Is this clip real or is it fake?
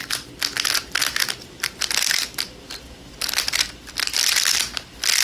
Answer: real